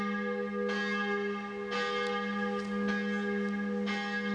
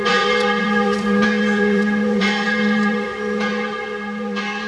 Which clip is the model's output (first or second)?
second